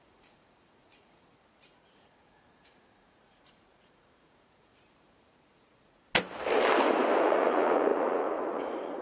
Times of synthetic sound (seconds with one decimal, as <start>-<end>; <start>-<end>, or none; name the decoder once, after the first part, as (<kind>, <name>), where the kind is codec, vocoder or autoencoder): 0.0-6.0 (vocoder, Vocos); 7.2-9.0